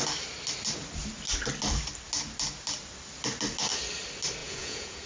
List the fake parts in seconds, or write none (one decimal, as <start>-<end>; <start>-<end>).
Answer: 4.4-5.1